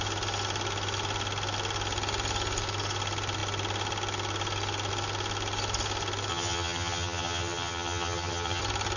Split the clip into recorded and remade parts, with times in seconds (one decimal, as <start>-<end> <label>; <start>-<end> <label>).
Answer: 0.0-6.3 recorded; 6.3-8.6 remade; 8.6-9.0 recorded